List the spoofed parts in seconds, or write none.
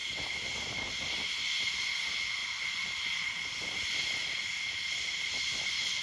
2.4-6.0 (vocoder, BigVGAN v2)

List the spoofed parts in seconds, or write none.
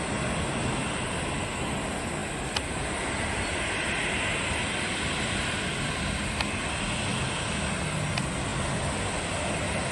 none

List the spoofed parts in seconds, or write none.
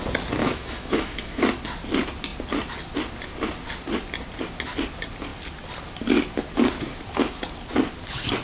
0.4-1.4 (autoencoder, DAC-VAE)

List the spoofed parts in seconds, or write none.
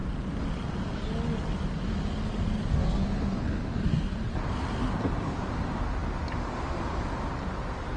none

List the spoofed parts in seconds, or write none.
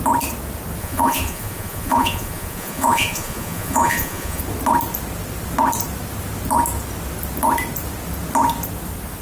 0.8-4.4 (vocoder, Vocos)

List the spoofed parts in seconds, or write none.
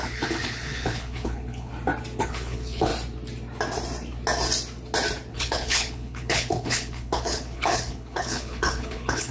0.0-1.7 (codec, HILCodec); 2.2-2.9; 5.3-9.3